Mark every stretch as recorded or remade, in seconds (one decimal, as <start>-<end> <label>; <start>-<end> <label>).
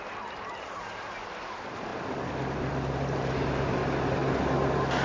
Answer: 0.0-4.2 remade; 4.2-5.0 recorded